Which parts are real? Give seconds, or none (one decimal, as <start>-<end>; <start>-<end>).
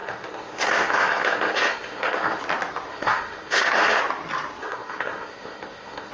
2.4-2.9; 4.0-4.6